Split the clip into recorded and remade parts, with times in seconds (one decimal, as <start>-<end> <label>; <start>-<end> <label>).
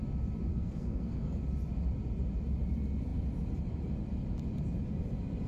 0.0-0.5 recorded; 0.5-1.4 remade; 1.4-5.5 recorded